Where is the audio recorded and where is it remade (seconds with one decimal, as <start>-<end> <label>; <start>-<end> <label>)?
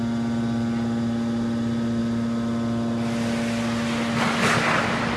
0.0-5.2 recorded